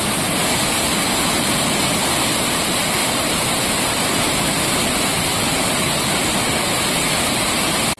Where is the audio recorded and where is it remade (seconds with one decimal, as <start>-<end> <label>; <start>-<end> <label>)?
0.0-3.0 recorded; 3.0-8.0 remade